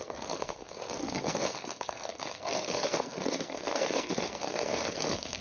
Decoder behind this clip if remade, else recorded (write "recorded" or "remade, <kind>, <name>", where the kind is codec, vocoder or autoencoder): remade, codec, SNAC